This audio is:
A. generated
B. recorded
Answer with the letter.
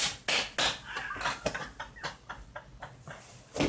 B